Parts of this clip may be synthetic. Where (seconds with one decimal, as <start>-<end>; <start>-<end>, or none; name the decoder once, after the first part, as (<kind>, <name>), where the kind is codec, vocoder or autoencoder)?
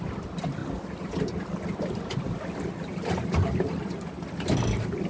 none